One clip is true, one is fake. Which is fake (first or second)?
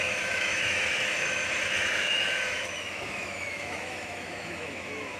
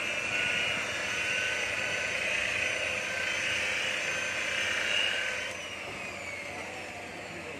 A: first